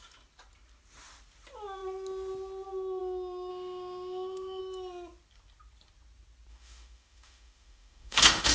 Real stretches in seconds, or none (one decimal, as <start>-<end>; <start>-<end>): 0.0-3.5; 4.6-6.5